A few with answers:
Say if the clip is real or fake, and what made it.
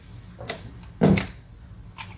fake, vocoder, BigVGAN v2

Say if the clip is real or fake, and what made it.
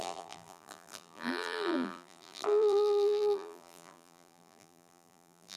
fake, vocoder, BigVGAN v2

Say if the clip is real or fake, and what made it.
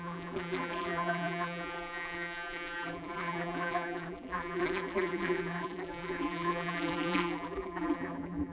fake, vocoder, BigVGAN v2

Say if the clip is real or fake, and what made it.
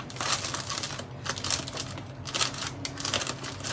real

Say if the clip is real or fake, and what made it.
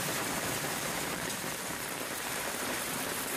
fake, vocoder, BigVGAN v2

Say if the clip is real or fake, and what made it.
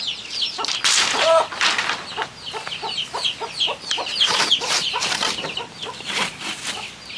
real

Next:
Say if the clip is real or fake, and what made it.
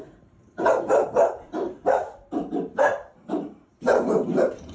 fake, vocoder, BigVGAN v2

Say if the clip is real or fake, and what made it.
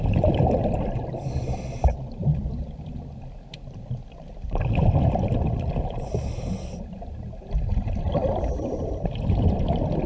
fake, vocoder, BigVGAN v2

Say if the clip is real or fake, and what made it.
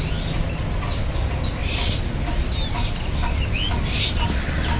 real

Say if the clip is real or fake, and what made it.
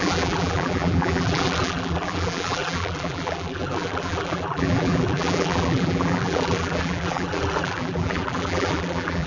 fake, vocoder, BigVGAN v2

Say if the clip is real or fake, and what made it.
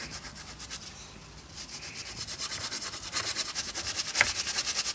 fake, vocoder, BigVGAN v2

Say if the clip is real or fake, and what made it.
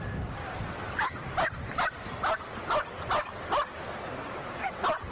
real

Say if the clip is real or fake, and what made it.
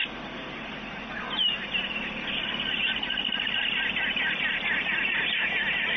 real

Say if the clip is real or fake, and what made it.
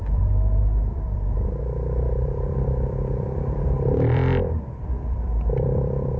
fake, vocoder, BigVGAN v2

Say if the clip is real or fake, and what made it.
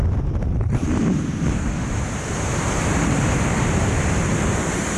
fake, vocoder, BigVGAN v2